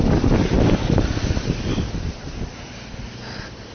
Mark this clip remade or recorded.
recorded